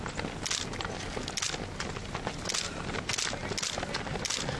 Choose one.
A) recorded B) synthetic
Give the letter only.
A